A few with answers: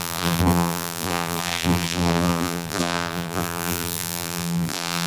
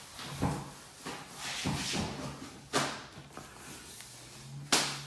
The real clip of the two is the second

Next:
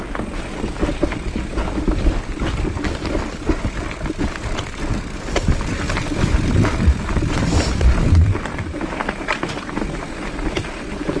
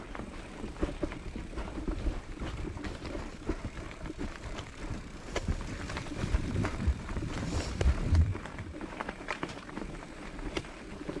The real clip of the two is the first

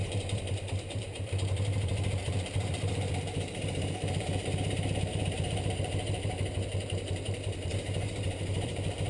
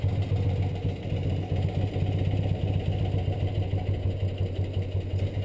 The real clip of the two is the second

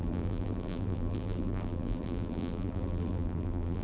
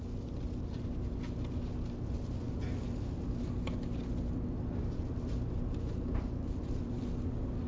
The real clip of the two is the second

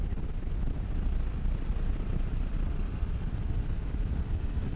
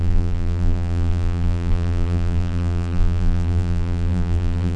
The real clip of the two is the first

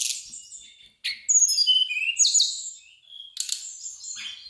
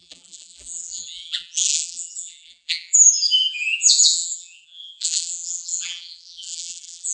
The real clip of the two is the first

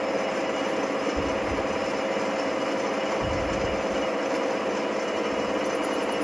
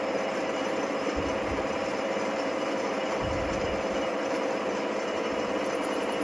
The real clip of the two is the first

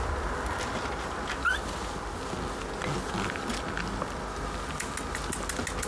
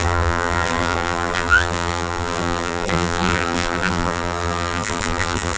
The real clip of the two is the first